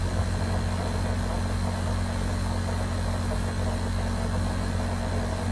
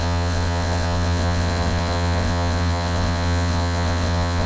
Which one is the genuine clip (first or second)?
first